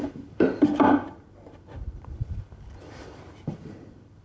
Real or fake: fake